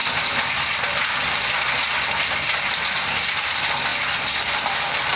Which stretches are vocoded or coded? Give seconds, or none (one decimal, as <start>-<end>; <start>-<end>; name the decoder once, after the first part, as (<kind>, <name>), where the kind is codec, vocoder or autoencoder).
none